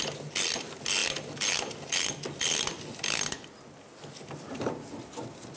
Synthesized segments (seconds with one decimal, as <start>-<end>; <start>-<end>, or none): none